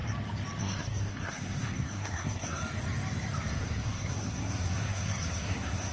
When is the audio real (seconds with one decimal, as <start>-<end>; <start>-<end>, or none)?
0.0-0.6; 2.6-3.5